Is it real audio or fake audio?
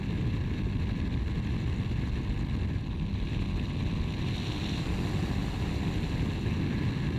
real